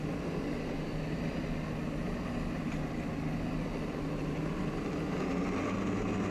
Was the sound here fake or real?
real